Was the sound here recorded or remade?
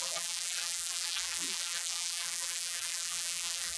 remade